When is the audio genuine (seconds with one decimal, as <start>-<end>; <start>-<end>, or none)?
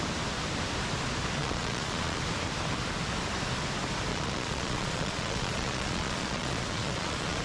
0.0-1.4; 2.2-4.1